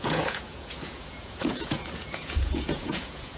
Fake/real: fake